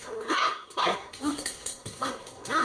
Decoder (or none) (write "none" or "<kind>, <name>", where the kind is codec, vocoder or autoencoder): codec, SNAC